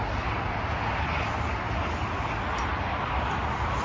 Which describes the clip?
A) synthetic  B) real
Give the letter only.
B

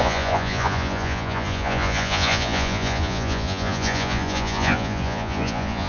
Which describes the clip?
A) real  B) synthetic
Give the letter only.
B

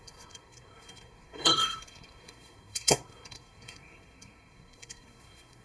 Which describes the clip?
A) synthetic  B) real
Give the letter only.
A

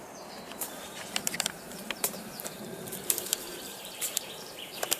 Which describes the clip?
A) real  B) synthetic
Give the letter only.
B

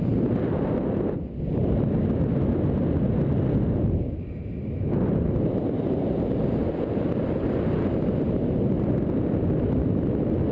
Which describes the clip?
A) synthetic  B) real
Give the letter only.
B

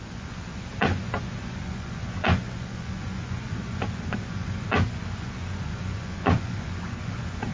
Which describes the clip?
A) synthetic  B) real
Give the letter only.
A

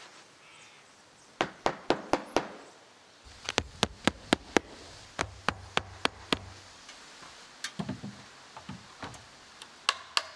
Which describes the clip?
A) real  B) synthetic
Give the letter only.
A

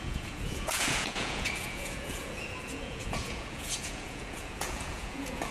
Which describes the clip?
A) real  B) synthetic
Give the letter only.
B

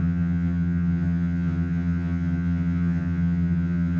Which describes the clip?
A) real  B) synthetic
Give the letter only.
B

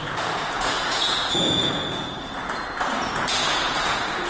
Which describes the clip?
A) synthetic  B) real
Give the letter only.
A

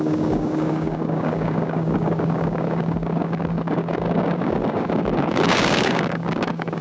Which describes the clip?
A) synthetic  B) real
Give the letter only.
A